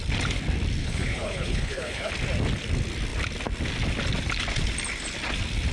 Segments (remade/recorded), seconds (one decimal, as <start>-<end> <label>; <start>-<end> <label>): 0.0-0.8 recorded; 0.8-2.1 remade; 2.1-5.7 recorded